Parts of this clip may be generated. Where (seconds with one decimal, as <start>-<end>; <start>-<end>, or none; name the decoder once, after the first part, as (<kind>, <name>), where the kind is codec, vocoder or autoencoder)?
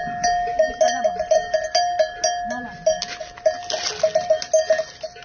none